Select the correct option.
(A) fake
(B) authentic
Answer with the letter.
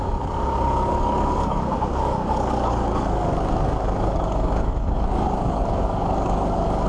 A